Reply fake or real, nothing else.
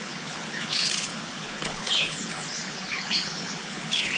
fake